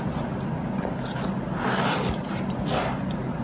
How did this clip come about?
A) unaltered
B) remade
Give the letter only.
A